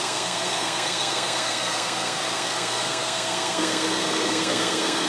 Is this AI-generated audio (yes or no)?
yes